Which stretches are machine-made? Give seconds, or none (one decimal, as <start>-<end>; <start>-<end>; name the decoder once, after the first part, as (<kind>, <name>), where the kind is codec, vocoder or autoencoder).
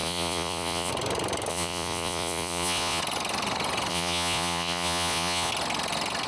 0.0-0.9 (vocoder, Vocos); 1.5-3.0; 3.9-5.5